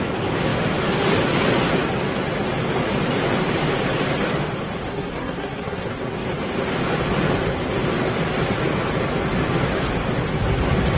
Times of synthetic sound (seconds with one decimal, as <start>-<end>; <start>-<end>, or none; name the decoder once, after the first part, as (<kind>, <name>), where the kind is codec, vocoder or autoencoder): 4.9-5.9 (codec, SNAC)